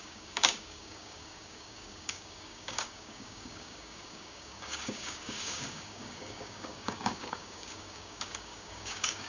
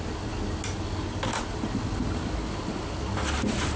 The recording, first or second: second